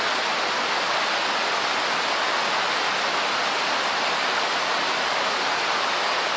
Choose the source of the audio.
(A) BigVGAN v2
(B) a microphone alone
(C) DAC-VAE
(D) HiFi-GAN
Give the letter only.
B